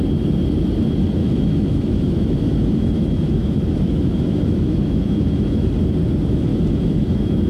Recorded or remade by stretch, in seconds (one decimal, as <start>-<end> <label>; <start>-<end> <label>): 0.0-1.2 recorded; 1.2-5.7 remade; 5.7-6.5 recorded; 6.5-7.5 remade